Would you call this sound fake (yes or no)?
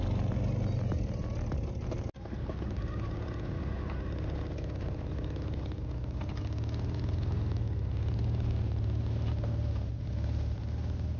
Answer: no